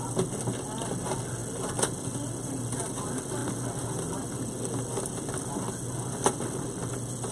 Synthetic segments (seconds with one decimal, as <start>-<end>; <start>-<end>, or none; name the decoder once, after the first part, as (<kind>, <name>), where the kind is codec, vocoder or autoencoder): none